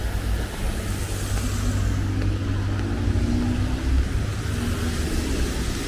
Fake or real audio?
real